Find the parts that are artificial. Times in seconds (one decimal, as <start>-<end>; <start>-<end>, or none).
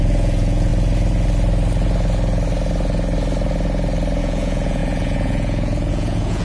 0.0-0.7; 4.2-6.4